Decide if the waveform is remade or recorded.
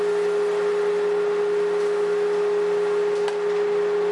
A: recorded